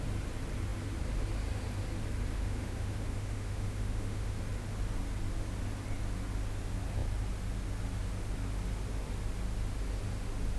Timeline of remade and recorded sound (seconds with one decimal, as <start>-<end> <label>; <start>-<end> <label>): 0.0-2.3 recorded; 2.3-4.4 remade; 4.4-10.6 recorded